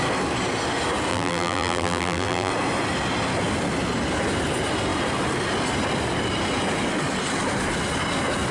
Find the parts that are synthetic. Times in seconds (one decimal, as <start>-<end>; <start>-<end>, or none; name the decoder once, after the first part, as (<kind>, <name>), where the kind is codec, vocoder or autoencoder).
1.1-2.5 (vocoder, BigVGAN v2)